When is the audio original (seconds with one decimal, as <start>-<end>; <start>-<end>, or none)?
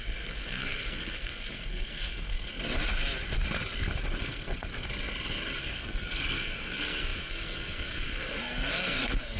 2.5-4.2; 4.7-5.6